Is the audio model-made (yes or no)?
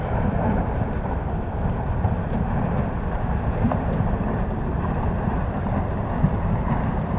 no